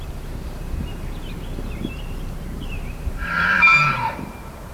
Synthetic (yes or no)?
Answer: yes